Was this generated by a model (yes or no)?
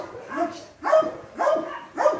no